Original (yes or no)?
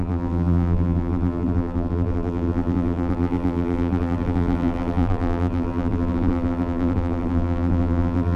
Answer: no